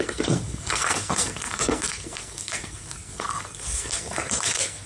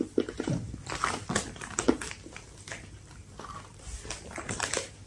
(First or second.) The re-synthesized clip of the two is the first